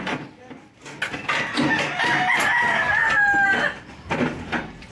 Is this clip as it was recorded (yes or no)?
yes